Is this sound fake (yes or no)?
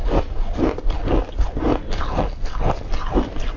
no